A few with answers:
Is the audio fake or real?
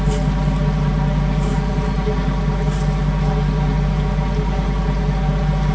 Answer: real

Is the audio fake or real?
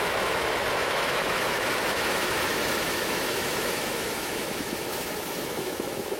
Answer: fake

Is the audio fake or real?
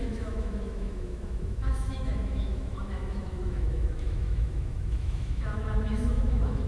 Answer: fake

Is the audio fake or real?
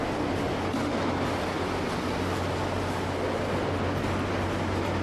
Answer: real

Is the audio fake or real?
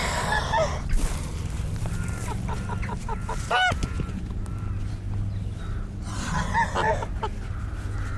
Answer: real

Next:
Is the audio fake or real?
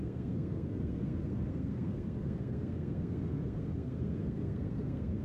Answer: fake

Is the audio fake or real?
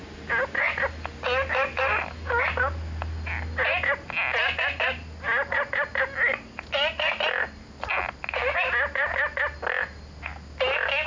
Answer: real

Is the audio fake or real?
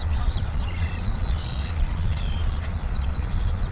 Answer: fake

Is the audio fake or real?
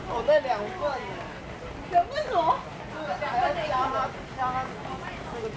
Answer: real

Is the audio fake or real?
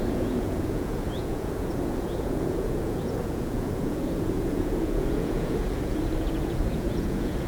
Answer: fake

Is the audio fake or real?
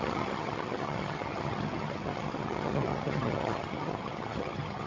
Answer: fake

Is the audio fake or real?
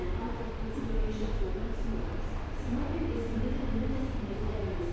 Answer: real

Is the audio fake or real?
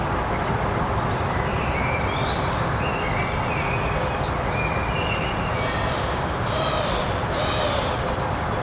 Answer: real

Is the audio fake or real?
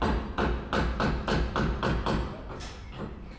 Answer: real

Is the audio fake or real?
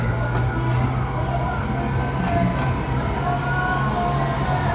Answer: real